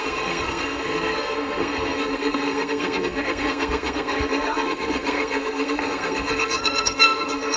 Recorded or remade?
remade